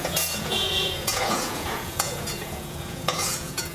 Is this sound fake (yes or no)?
yes